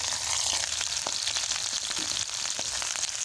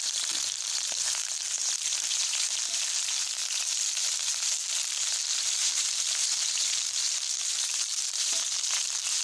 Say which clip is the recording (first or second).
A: first